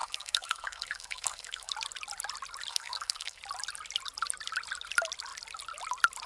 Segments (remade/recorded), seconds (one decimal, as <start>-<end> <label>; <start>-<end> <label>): 0.0-1.7 remade; 1.7-2.7 recorded; 2.7-3.4 remade; 3.4-6.3 recorded